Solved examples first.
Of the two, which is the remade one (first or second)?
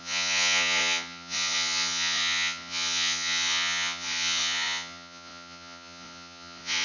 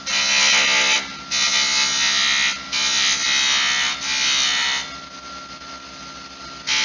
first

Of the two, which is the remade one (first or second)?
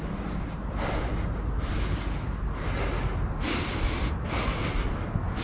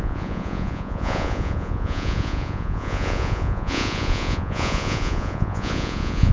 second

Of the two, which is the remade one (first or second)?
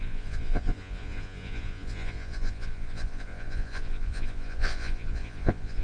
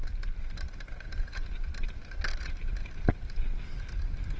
first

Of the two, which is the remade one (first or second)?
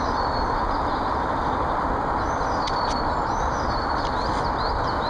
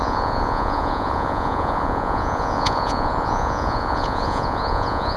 second